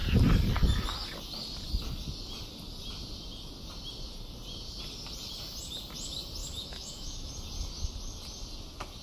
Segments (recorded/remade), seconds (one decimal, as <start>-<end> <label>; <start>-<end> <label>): 0.0-6.4 recorded; 6.4-7.3 remade; 7.3-9.0 recorded